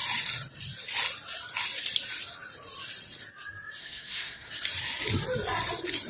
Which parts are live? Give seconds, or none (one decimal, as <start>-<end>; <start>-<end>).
0.0-3.8; 4.5-6.1